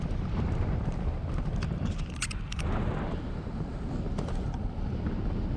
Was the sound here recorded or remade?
recorded